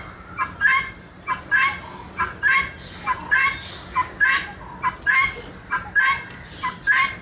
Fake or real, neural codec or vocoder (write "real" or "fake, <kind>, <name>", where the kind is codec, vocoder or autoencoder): real